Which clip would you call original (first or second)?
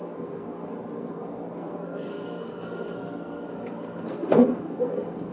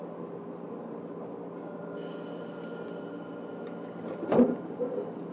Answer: second